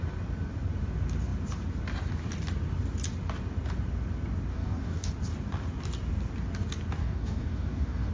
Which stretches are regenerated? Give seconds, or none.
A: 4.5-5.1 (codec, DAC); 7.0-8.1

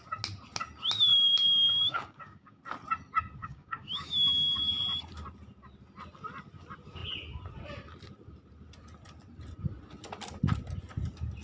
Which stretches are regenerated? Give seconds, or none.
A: 1.1-2.6 (codec, DAC); 3.4-4.7

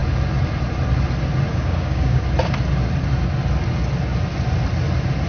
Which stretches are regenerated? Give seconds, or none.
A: 1.5-2.2 (codec, DAC)

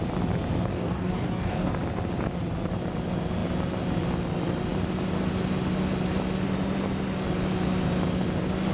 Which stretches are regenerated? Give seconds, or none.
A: 0.7-1.7 (codec, DAC)